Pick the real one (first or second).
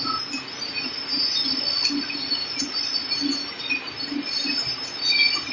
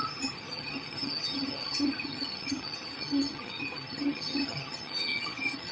first